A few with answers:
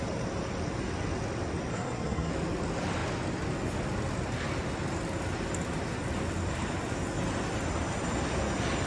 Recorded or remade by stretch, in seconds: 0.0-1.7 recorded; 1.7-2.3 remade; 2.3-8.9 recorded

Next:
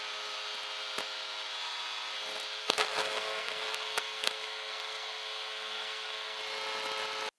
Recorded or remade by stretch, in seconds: 0.0-2.6 recorded; 2.6-6.4 remade; 6.4-7.4 recorded

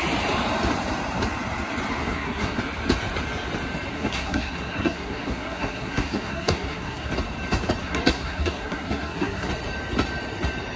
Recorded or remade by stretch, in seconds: 0.0-2.0 recorded; 2.0-2.6 remade; 2.6-3.9 recorded; 3.9-7.1 remade; 7.1-7.8 recorded; 7.8-9.5 remade; 9.5-10.8 recorded